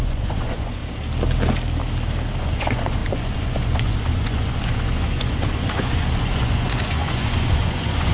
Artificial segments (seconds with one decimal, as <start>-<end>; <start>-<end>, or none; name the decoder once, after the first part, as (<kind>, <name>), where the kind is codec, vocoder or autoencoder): 0.0-0.8 (vocoder, Vocos); 2.4-8.1

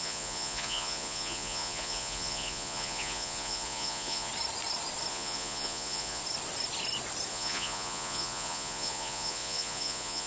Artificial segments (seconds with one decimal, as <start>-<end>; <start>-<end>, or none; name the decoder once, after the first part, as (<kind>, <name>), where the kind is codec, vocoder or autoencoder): 0.0-4.3 (vocoder, Vocos); 5.1-6.2; 7.3-10.3

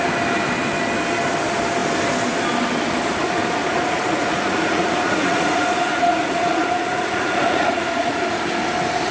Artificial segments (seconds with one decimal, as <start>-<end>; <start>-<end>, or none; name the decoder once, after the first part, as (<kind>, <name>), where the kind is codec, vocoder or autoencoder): 3.6-8.2 (vocoder, Vocos)